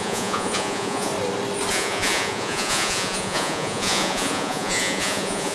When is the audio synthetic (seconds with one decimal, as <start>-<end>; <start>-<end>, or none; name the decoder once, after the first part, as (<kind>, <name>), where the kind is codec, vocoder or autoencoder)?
0.0-1.1 (vocoder, Vocos); 1.7-5.5